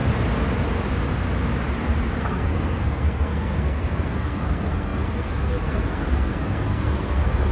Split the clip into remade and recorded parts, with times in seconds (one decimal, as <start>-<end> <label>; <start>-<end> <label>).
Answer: 0.0-2.2 recorded; 2.2-7.5 remade

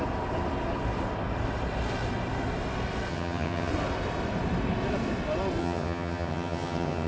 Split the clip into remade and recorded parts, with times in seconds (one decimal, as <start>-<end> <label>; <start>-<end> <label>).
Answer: 0.0-3.1 recorded; 3.1-3.7 remade; 3.7-5.6 recorded; 5.6-7.1 remade

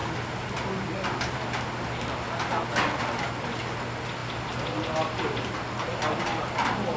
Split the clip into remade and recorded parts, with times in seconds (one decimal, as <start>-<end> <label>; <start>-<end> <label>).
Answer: 0.0-7.0 recorded

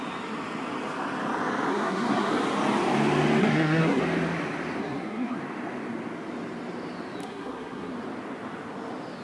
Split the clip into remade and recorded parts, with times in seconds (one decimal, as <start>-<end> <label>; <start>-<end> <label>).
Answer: 0.0-1.7 recorded; 1.7-2.3 remade; 2.3-3.4 recorded; 3.4-4.0 remade; 4.0-4.8 recorded; 4.8-5.4 remade; 5.4-7.2 recorded; 7.2-7.9 remade; 7.9-9.2 recorded

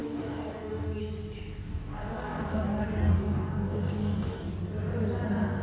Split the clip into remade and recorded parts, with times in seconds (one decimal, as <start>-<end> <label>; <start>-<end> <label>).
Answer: 0.0-1.0 remade; 1.0-1.6 recorded; 1.6-4.5 remade; 4.5-5.6 recorded

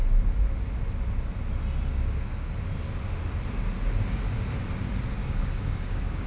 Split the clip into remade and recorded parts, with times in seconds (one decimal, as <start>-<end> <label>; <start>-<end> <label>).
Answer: 0.0-1.9 recorded; 1.9-2.5 remade; 2.5-5.2 recorded; 5.2-6.3 remade